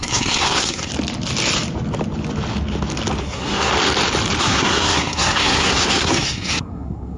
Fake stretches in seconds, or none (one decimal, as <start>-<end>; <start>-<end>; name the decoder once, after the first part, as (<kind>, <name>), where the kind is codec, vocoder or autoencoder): 0.0-0.9 (codec, SNAC); 3.2-3.7; 4.4-7.2

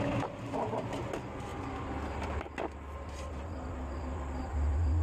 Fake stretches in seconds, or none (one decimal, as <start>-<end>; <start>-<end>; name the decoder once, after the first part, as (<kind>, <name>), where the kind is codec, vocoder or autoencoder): none

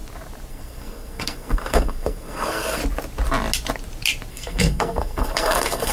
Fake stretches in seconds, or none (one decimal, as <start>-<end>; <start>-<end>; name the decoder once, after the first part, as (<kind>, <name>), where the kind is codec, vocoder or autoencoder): 0.5-2.8 (codec, SNAC); 4.3-5.9

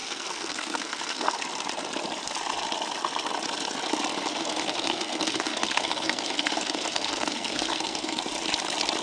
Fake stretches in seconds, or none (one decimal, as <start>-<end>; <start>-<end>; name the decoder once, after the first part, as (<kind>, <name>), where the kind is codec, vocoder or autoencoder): 0.0-1.4 (codec, SNAC); 4.3-8.2

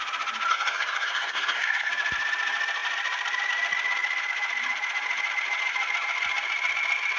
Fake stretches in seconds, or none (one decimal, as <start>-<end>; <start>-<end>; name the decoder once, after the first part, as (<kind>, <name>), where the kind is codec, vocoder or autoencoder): 0.5-1.9 (codec, SNAC)